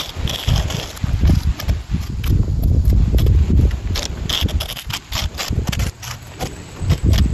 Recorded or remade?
recorded